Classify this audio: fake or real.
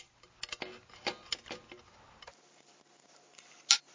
real